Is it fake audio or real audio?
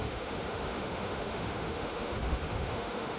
fake